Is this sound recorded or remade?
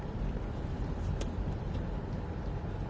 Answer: recorded